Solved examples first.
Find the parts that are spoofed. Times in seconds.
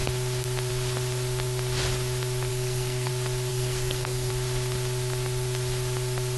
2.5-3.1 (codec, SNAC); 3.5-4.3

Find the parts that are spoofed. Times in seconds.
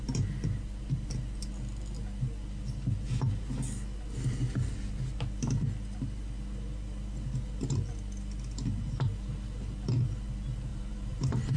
10.7-11.6 (vocoder, BigVGAN v2)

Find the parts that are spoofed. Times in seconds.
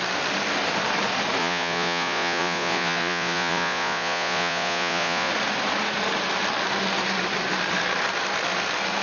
1.4-5.3 (vocoder, Vocos)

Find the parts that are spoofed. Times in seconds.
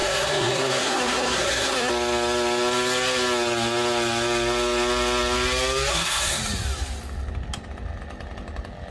0.0-1.9 (codec, SNAC); 5.9-6.4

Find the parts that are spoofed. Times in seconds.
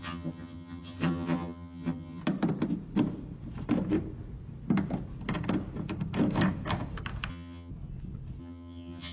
0.0-2.2 (vocoder, HiFi-GAN); 7.3-7.7; 8.4-9.1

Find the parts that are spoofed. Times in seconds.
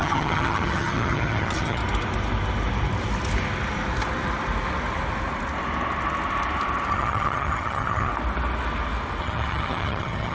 0.0-1.8 (vocoder, HiFi-GAN); 6.9-8.1; 9.2-10.3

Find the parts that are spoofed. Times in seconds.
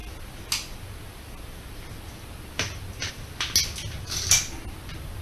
none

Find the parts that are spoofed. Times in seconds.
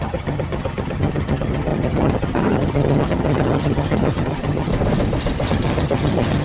0.0-4.7 (vocoder, HiFi-GAN); 5.5-6.4